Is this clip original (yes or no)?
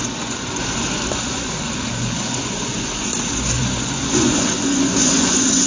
no